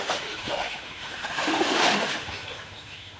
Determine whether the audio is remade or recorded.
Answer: remade